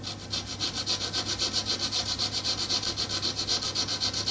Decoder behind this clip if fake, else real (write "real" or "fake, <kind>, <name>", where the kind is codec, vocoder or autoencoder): real